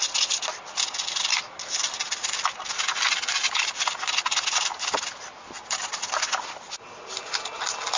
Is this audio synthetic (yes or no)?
no